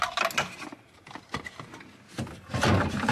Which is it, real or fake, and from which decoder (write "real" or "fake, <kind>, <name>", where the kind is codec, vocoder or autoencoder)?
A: real